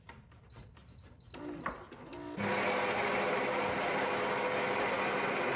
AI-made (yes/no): no